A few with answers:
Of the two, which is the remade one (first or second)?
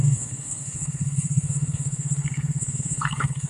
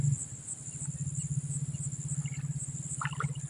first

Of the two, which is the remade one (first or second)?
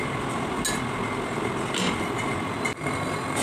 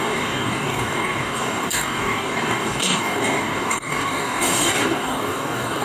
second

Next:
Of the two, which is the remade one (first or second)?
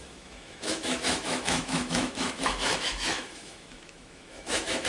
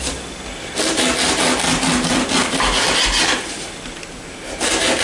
first